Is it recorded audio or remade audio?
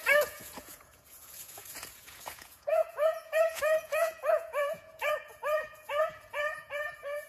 remade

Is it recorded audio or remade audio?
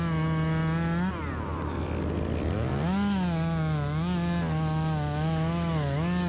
recorded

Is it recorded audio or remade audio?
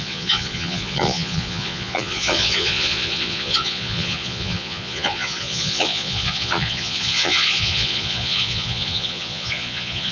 remade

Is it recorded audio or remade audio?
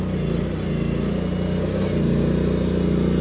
recorded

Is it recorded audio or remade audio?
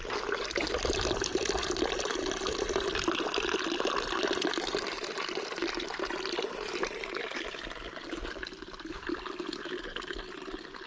recorded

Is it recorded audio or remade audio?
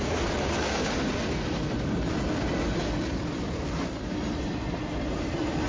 recorded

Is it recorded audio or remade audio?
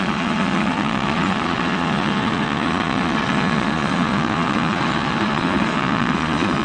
remade